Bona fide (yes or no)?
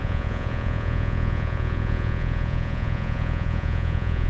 no